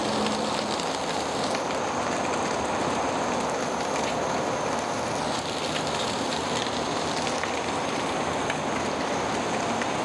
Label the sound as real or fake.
fake